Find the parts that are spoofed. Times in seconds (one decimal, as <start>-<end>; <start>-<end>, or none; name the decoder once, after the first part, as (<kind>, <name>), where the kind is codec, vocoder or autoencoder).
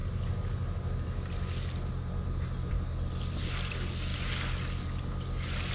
none